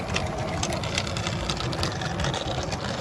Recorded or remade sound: recorded